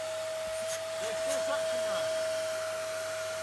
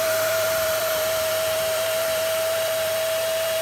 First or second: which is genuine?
first